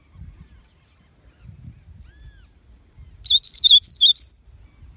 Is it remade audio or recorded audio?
recorded